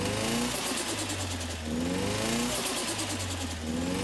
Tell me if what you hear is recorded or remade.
recorded